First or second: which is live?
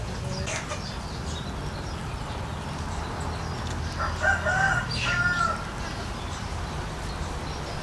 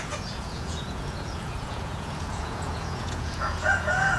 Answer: first